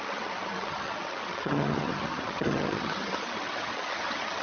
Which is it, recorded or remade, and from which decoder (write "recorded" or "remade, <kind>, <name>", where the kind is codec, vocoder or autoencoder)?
remade, vocoder, HiFi-GAN